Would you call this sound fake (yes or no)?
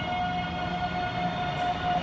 no